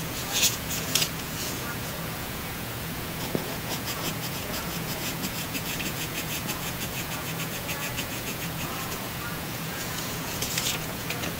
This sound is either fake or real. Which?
fake